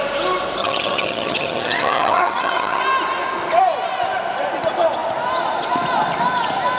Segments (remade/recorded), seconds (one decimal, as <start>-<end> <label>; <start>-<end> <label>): 0.0-0.6 recorded; 0.6-2.8 remade; 2.8-6.8 recorded

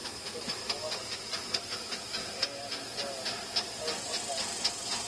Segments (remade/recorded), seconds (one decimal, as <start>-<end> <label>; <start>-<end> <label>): 0.0-2.2 remade; 2.2-5.1 recorded